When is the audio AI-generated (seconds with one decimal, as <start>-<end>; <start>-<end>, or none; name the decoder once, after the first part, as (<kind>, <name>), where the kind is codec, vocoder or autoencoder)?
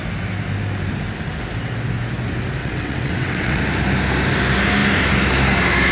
2.6-3.6 (vocoder, WaveNeXt)